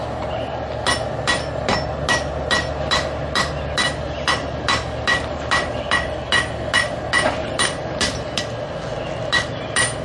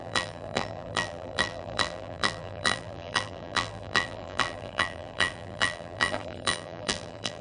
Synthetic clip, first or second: second